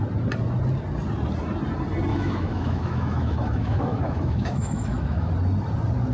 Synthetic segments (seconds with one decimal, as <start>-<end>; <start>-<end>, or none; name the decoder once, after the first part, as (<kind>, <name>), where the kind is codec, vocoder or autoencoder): 2.1-5.3 (autoencoder, DAC-VAE)